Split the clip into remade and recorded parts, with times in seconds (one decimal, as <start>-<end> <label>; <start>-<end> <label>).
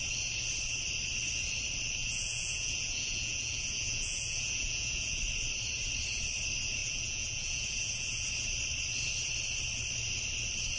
0.0-2.0 recorded; 2.0-5.2 remade; 5.2-6.8 recorded; 6.8-8.3 remade; 8.3-10.8 recorded